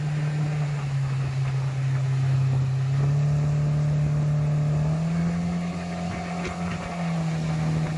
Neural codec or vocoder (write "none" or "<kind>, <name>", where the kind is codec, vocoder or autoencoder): none